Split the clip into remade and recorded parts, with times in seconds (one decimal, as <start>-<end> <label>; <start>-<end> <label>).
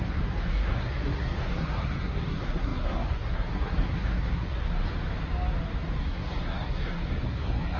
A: 0.0-4.8 remade; 4.8-6.0 recorded; 6.0-7.8 remade